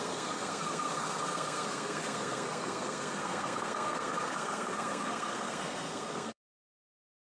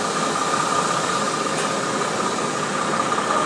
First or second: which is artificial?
first